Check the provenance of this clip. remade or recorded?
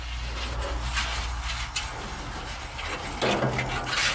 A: recorded